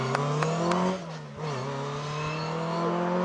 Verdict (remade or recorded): recorded